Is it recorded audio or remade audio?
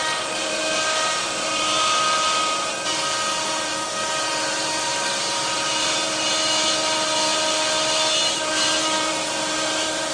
remade